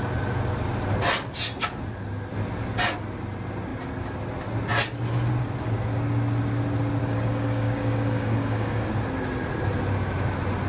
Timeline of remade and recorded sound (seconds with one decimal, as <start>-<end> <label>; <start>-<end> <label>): 0.0-7.0 recorded; 7.0-8.9 remade; 8.9-10.7 recorded